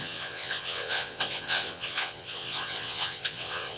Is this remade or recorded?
remade